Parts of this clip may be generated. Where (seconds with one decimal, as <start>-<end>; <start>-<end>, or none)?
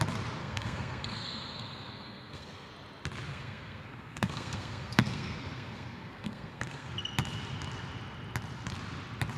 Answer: 0.4-2.7; 3.3-6.9